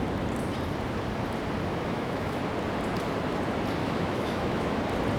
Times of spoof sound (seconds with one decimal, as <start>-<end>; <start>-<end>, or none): 1.7-2.4; 3.8-4.8